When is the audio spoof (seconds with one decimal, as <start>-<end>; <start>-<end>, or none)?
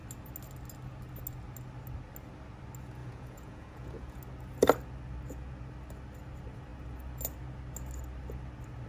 3.0-4.2